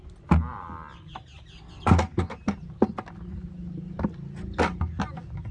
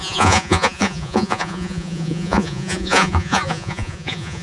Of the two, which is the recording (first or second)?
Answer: first